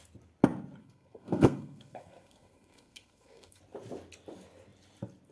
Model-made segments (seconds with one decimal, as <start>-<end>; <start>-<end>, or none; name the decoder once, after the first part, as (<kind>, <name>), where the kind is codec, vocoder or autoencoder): 0.8-3.6 (codec, SNAC)